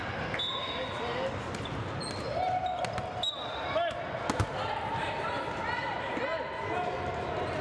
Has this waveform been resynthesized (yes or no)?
no